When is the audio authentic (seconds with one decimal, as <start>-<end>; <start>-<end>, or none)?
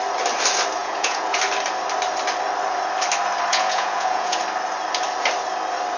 0.0-0.8; 1.4-3.5; 4.4-6.0